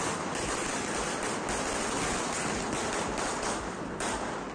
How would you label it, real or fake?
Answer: real